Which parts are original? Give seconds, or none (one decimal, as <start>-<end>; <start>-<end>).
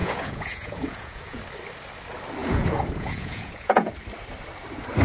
1.4-2.4; 3.9-5.0